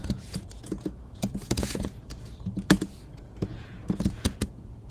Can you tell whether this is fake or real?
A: fake